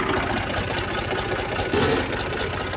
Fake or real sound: real